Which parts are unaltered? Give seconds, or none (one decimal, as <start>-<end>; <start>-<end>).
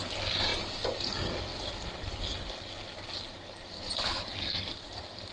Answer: 0.0-5.3